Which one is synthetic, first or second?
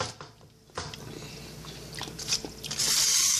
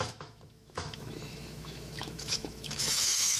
second